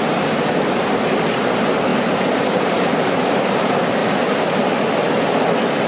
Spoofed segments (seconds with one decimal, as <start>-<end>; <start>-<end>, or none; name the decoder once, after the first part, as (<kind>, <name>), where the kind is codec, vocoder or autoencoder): none